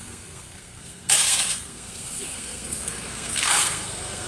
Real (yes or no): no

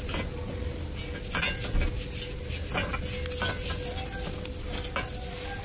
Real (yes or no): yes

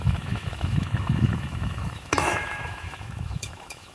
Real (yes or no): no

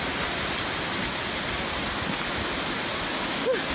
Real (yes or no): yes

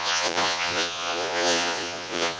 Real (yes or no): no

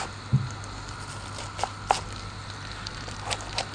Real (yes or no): yes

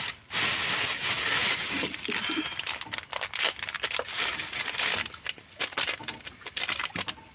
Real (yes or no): yes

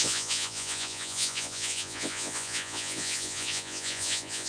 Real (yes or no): no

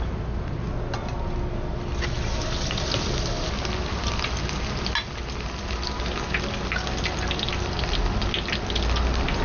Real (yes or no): yes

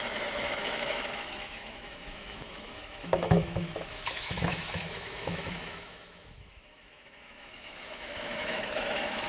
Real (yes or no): no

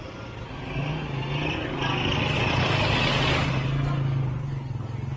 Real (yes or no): yes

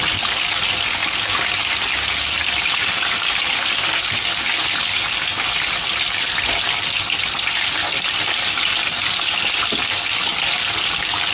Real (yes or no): yes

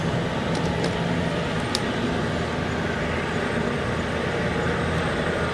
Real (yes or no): yes